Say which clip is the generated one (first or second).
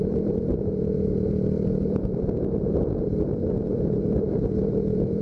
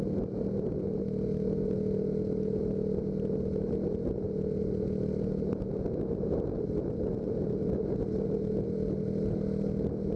first